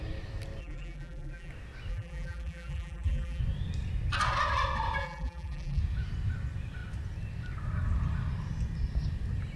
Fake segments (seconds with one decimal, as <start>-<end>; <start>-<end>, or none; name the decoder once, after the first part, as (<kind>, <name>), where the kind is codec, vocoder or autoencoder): 0.6-1.5 (vocoder, BigVGAN v2); 1.9-3.4; 5.0-5.8